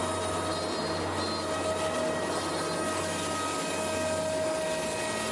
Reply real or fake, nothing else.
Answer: real